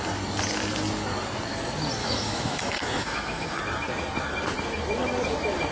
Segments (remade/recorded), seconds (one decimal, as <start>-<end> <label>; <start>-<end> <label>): 0.0-2.0 recorded; 2.0-3.6 remade; 3.6-5.7 recorded